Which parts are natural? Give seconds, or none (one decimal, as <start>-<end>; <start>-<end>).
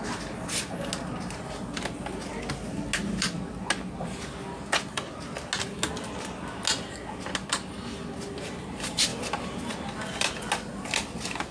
0.0-11.5